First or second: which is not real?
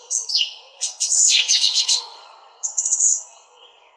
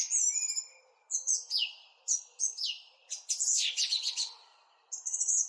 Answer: first